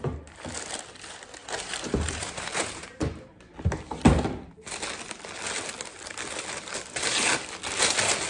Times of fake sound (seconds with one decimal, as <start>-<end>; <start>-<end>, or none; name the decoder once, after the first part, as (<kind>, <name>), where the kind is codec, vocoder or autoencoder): 1.4-3.4 (vocoder, BigVGAN v2)